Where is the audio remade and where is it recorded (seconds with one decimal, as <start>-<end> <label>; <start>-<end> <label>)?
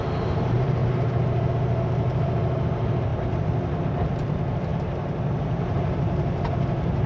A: 0.0-0.8 remade; 0.8-1.5 recorded; 1.5-3.1 remade; 3.1-3.8 recorded; 3.8-7.1 remade